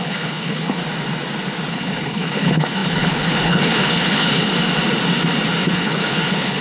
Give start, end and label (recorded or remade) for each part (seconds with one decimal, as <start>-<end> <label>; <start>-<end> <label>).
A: 0.0-0.8 remade; 0.8-1.7 recorded; 1.7-4.5 remade; 4.5-5.6 recorded; 5.6-6.6 remade